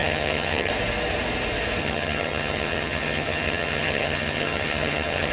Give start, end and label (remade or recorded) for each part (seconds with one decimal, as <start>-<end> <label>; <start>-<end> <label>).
0.0-0.7 remade; 0.7-1.8 recorded; 1.8-5.3 remade